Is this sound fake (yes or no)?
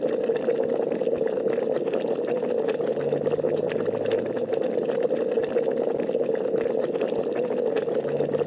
no